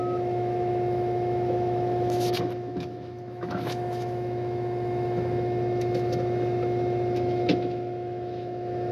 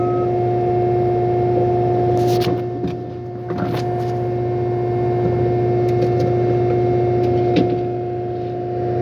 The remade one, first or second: first